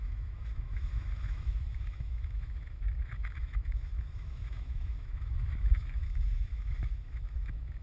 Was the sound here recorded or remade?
remade